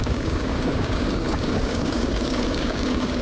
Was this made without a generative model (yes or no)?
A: no